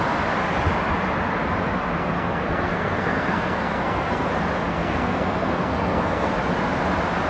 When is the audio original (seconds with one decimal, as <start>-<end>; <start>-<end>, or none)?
0.0-2.0; 4.3-4.7; 6.3-7.3